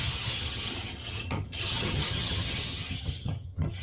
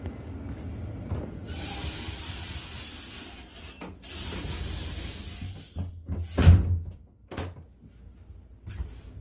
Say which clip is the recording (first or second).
second